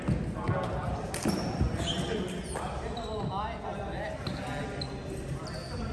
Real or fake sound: real